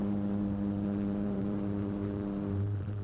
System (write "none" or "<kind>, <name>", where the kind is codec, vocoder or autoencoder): vocoder, BigVGAN v2